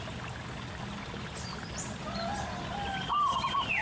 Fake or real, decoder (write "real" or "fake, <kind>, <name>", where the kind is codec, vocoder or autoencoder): real